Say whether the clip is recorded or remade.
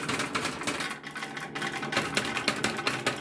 recorded